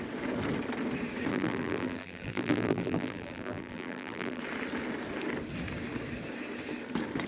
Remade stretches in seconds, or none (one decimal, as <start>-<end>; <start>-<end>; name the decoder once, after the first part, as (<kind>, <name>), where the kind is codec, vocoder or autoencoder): 1.3-4.4 (vocoder, BigVGAN v2)